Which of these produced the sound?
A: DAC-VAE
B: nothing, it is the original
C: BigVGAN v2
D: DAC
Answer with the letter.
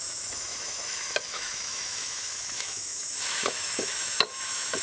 A